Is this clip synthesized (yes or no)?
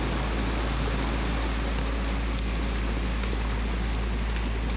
no